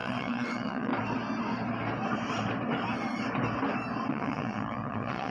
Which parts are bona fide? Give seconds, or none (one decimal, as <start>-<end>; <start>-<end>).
0.9-4.1